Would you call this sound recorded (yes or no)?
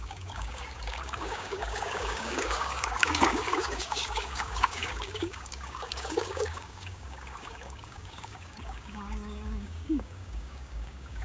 no